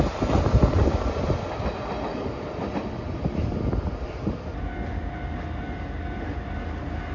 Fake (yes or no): no